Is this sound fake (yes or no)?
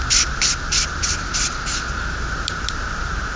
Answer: no